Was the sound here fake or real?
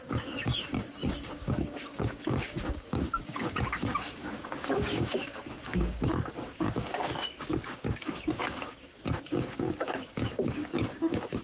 fake